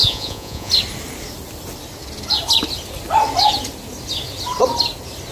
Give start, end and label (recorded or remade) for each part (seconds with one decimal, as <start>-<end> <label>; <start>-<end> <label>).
0.0-0.7 remade; 0.7-5.3 recorded

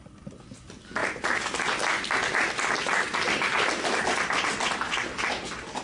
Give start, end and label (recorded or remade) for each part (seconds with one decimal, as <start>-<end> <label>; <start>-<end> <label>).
0.0-5.8 recorded

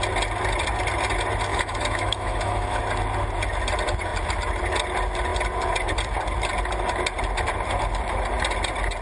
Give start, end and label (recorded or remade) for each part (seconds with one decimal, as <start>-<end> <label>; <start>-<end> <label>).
0.0-1.5 recorded; 1.5-2.8 remade; 2.8-9.0 recorded

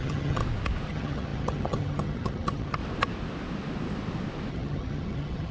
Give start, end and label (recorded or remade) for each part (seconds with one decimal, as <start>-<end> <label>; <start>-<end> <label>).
0.0-0.4 remade; 0.4-0.9 recorded; 0.9-2.8 remade; 2.8-4.5 recorded; 4.5-5.5 remade